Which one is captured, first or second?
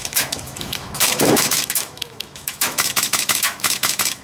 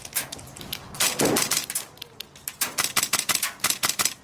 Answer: second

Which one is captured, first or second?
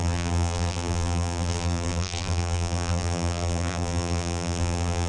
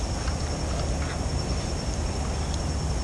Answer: second